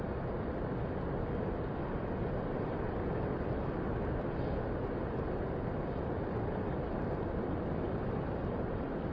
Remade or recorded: recorded